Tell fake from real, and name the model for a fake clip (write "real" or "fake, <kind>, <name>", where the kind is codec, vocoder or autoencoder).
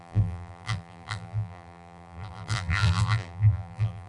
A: fake, vocoder, BigVGAN v2